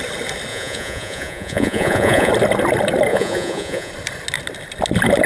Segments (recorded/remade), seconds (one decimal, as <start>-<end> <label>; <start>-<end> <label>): 0.0-0.5 recorded; 0.5-2.3 remade; 2.3-3.1 recorded; 3.1-3.9 remade; 3.9-5.3 recorded